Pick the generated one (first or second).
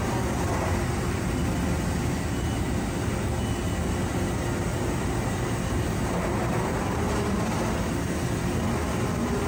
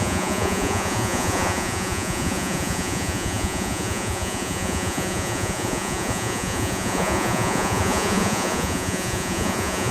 second